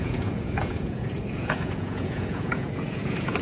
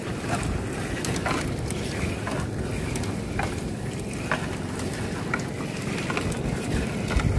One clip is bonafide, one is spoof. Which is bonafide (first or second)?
second